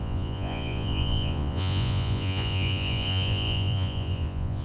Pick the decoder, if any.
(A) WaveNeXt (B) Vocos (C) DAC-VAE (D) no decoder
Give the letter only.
B